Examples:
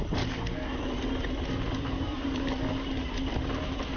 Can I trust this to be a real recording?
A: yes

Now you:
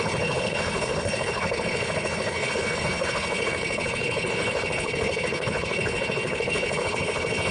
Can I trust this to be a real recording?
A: no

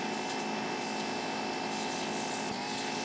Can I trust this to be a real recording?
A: yes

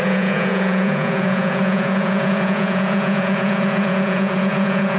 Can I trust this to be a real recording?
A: no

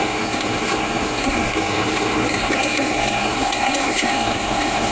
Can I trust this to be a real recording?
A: no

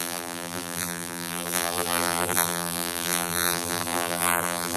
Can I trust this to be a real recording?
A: no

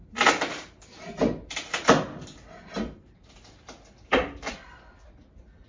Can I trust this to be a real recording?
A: yes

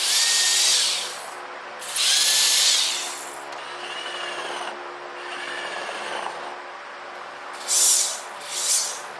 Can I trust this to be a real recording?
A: yes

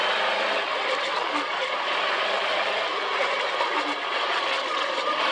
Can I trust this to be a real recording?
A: yes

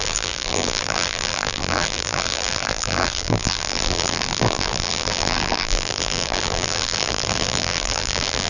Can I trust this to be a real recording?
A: no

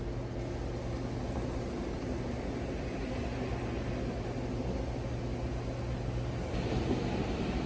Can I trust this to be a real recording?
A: yes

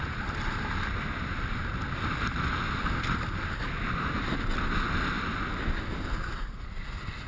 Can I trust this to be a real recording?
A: yes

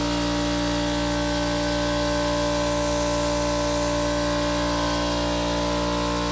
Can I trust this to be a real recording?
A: yes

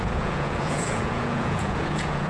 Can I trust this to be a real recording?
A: no